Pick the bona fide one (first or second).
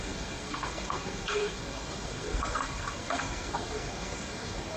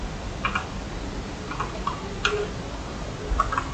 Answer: second